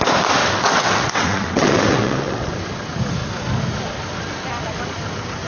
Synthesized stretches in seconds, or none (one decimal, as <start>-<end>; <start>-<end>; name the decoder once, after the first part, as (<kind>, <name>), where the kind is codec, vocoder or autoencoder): 0.4-2.5 (vocoder, WaveNeXt)